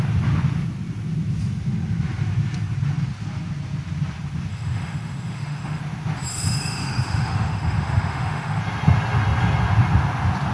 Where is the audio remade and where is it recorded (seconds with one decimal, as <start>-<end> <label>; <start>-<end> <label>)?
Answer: 0.0-4.5 recorded; 4.5-5.8 remade; 5.8-6.3 recorded; 6.3-8.6 remade; 8.6-10.5 recorded

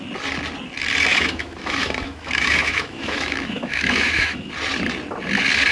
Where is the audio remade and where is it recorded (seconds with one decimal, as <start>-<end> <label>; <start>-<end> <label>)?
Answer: 0.0-1.1 recorded; 1.1-4.5 remade; 4.5-5.7 recorded

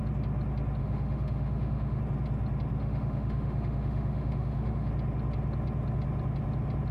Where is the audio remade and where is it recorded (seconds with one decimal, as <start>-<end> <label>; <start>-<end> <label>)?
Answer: 0.0-0.8 recorded; 0.8-2.0 remade; 2.0-2.8 recorded; 2.8-4.9 remade; 4.9-6.9 recorded

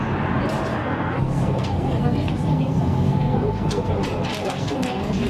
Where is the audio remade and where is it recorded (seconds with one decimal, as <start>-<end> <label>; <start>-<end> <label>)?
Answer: 0.0-0.7 recorded; 0.7-3.9 remade; 3.9-4.4 recorded; 4.4-5.3 remade

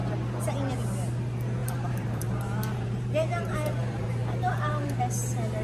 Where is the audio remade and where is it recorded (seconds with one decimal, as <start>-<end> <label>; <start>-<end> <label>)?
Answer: 0.0-1.6 recorded; 1.6-5.0 remade; 5.0-5.6 recorded